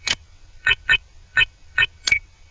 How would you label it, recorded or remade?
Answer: remade